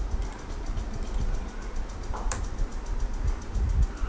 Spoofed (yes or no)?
no